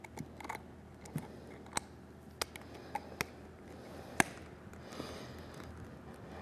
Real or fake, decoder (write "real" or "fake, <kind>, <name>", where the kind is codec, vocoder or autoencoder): real